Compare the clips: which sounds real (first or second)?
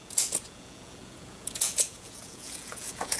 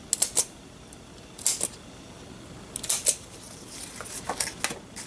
second